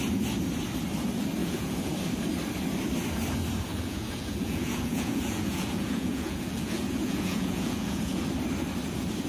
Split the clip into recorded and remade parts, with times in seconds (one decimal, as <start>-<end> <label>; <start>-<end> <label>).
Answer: 0.0-1.4 recorded; 1.4-1.9 remade; 1.9-3.7 recorded; 3.7-8.2 remade; 8.2-9.3 recorded